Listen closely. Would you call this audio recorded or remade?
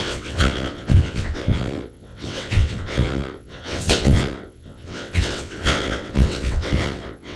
remade